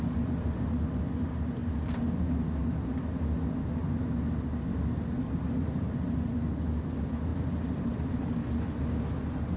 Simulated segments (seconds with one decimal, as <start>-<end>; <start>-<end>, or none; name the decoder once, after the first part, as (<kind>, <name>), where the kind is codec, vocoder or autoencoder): 7.3-8.4 (vocoder, BigVGAN v2)

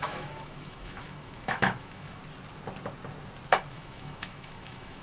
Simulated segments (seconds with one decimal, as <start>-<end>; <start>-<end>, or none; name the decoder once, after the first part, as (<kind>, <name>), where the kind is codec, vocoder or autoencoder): 0.0-2.2 (autoencoder, DAC-VAE); 3.7-5.0

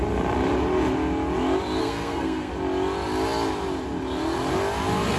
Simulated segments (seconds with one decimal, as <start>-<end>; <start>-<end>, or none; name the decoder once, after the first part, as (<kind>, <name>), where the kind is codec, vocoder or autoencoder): 1.8-2.5 (codec, SNAC)

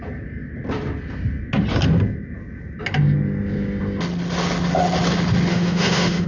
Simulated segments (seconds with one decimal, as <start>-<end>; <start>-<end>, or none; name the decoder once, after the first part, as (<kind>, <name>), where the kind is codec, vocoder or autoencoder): 5.5-6.3 (autoencoder, DAC-VAE)

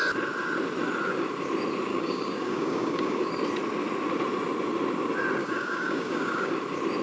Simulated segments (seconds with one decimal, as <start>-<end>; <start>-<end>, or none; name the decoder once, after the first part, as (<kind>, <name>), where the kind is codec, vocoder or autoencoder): 1.9-3.3 (codec, DAC); 5.4-6.5

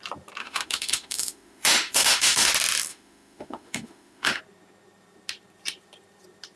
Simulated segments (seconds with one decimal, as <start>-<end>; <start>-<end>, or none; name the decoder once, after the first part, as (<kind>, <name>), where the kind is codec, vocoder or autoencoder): 0.4-2.5 (autoencoder, DAC-VAE); 2.9-4.4

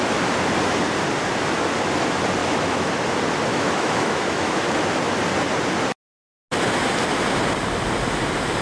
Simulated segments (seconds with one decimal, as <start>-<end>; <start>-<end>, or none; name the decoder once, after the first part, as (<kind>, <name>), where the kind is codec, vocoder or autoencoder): 2.4-2.9 (autoencoder, DAC-VAE); 3.5-4.8